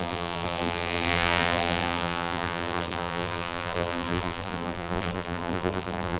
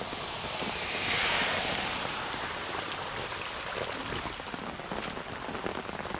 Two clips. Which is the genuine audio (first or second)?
second